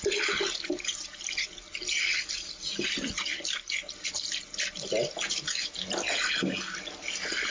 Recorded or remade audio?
recorded